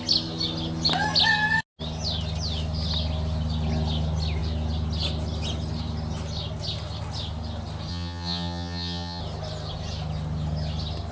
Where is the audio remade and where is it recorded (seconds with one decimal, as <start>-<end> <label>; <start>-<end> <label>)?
0.0-7.9 recorded; 7.9-9.2 remade; 9.2-11.1 recorded